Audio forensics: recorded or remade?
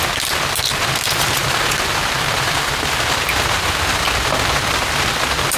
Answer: remade